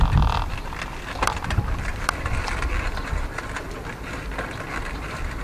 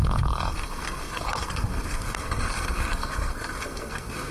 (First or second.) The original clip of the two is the first